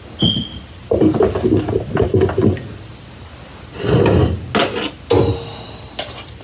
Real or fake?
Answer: real